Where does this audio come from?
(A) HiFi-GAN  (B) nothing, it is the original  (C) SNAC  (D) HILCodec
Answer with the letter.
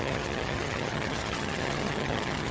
A